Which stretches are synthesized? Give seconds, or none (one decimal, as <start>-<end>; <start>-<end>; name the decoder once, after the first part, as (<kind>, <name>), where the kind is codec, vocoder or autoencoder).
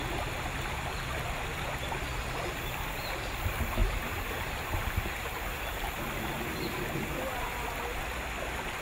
3.8-4.9 (vocoder, BigVGAN v2)